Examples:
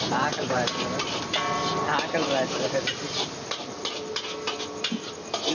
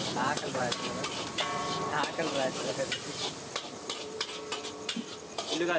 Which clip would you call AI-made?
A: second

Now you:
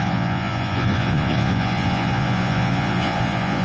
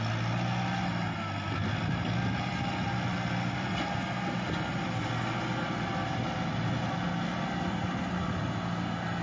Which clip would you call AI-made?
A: first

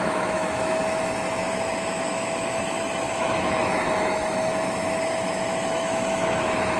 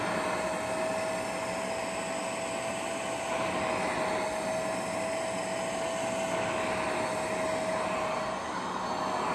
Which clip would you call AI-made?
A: first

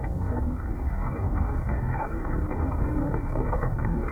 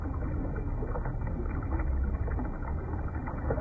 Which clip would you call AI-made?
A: first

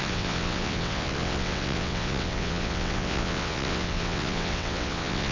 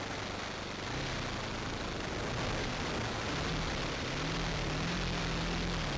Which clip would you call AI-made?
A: first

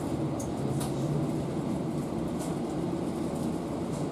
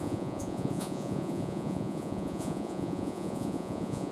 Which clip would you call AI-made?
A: second